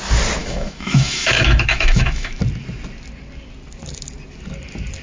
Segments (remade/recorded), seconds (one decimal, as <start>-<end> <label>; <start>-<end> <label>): 0.0-0.4 recorded; 0.4-2.4 remade; 2.4-5.0 recorded